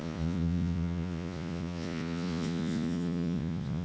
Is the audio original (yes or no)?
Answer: no